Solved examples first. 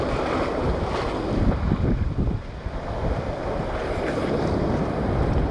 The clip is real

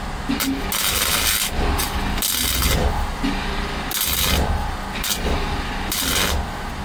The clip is real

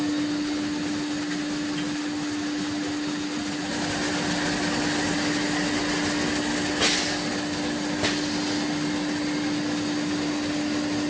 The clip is real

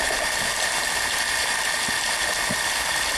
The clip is real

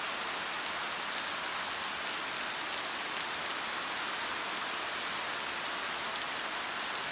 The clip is real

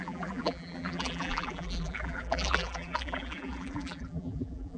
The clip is fake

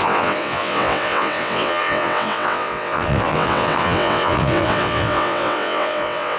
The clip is fake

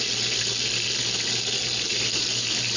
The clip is real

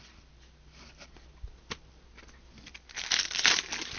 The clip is real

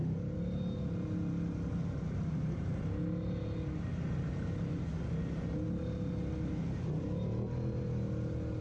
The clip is real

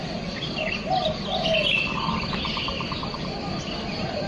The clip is real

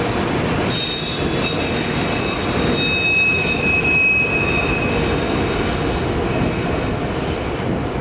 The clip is real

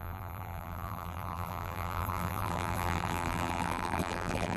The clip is fake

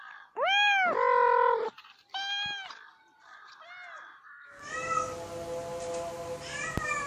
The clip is real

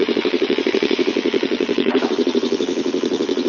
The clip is fake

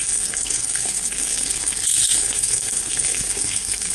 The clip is fake